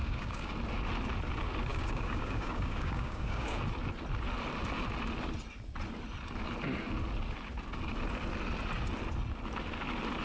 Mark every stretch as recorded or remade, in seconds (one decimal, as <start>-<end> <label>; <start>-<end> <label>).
0.0-0.5 remade; 0.5-1.7 recorded; 1.7-3.6 remade; 3.6-10.2 recorded